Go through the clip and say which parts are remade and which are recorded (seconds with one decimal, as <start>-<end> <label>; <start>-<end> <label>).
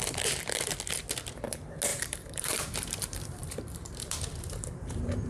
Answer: 0.0-1.9 recorded; 1.9-5.3 remade